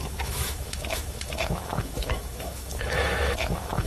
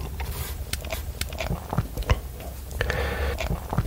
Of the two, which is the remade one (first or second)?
first